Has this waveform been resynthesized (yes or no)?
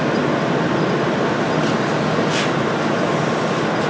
no